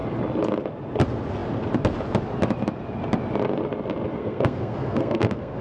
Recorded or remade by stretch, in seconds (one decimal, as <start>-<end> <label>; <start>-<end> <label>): 0.0-4.2 recorded; 4.2-5.6 remade